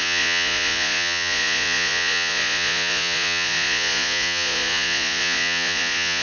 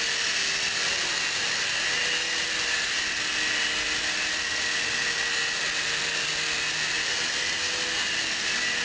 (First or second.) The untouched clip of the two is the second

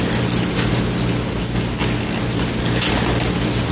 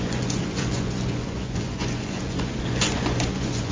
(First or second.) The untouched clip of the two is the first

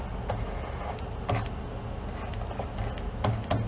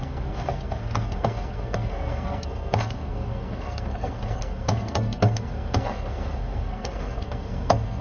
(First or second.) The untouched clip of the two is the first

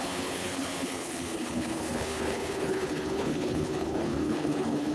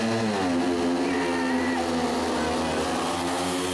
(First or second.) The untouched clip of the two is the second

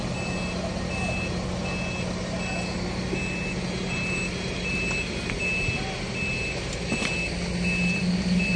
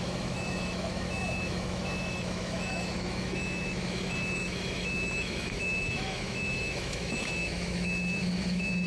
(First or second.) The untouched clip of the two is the first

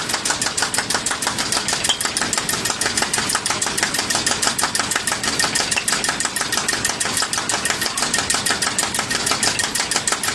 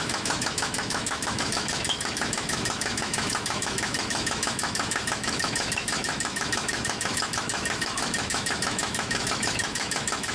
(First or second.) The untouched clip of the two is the first